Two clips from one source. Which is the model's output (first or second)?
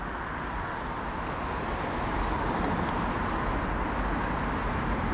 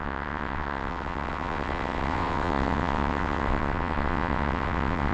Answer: second